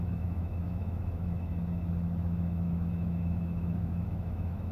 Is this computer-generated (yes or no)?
yes